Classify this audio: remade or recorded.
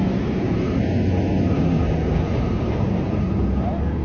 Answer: recorded